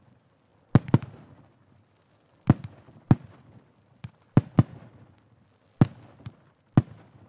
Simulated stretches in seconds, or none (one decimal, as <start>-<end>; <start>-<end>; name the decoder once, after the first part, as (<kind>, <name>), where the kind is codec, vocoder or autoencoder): none